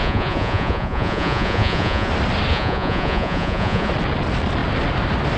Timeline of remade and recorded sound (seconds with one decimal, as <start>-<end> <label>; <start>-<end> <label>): 0.0-2.1 remade; 2.1-2.5 recorded; 2.5-3.9 remade; 3.9-5.4 recorded